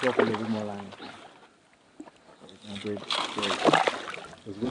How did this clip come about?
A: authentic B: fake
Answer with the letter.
A